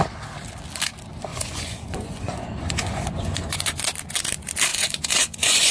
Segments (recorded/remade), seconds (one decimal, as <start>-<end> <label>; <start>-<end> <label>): 0.0-1.3 recorded; 1.3-3.8 remade; 3.8-4.7 recorded; 4.7-5.7 remade